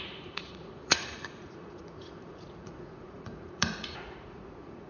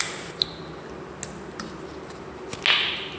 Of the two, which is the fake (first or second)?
first